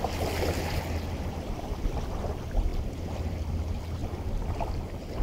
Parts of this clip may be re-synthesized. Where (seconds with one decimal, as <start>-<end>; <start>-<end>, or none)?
2.7-3.3